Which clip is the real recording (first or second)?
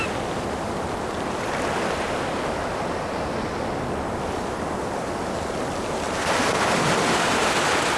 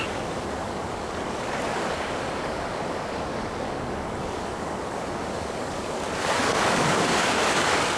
first